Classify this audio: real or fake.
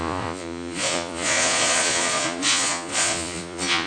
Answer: fake